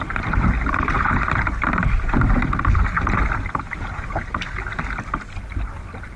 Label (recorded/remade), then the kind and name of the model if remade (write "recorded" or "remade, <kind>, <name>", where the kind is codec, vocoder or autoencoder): recorded